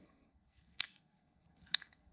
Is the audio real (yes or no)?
no